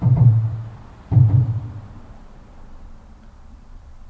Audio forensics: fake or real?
fake